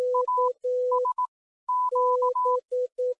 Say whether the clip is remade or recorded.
recorded